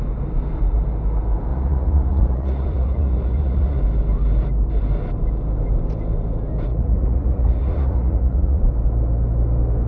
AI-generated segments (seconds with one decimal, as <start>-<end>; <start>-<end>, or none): 1.5-3.8; 6.7-8.6

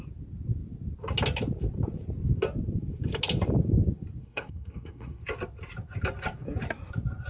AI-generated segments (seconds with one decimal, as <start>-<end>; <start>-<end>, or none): 4.2-5.2

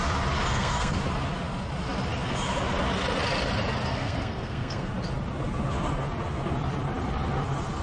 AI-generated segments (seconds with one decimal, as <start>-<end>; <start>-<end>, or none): 0.5-1.0; 3.9-4.9

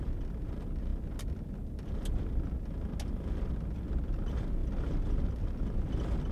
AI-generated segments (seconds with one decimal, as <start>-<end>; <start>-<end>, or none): none

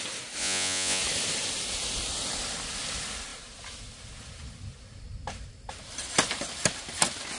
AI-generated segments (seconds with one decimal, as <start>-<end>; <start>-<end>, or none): 0.4-1.0

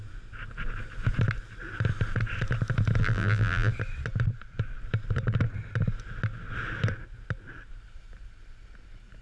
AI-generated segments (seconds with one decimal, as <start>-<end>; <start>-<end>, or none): 3.0-3.7

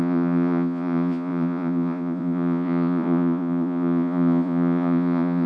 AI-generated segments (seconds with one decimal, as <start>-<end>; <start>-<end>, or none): 0.0-5.5